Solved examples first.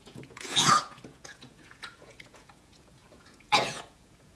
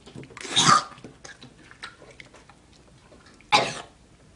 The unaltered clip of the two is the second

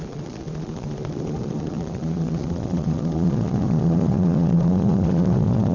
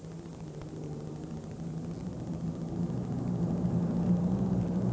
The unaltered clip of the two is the second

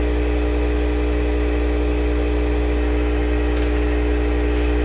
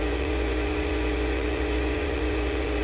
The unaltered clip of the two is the first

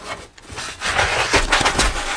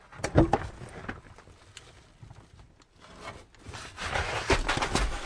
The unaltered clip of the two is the second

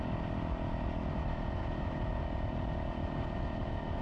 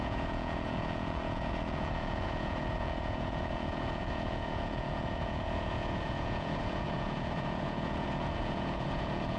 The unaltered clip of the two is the first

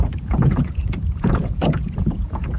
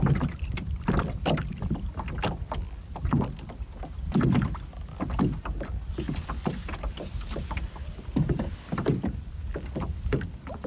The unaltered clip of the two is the second